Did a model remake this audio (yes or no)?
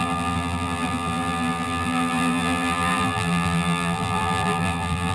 yes